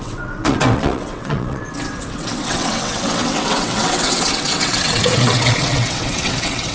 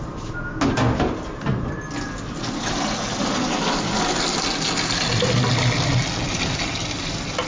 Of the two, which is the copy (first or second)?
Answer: first